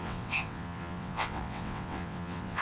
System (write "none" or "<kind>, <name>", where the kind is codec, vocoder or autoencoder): vocoder, WaveNeXt